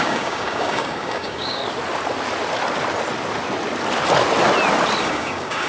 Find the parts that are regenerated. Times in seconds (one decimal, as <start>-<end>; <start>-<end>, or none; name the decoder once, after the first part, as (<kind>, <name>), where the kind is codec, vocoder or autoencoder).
0.0-1.6 (codec, DAC); 5.0-5.7